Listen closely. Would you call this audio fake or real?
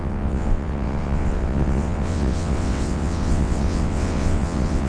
fake